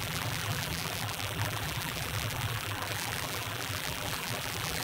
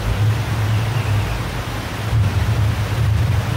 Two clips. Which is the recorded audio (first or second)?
second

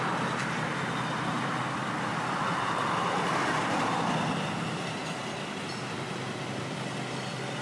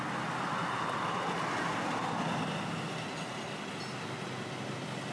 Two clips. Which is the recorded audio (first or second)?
second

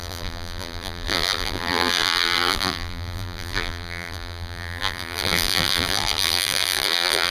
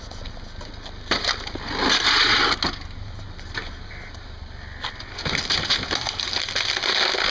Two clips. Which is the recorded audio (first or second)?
second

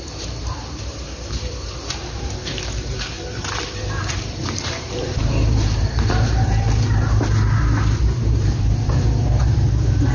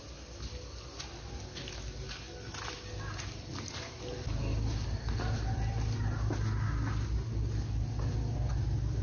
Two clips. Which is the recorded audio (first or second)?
second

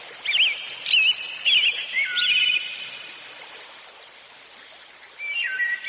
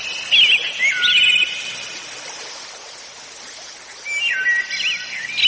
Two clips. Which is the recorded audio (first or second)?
second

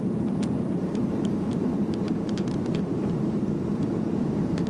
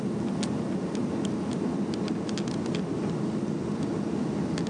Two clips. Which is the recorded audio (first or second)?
second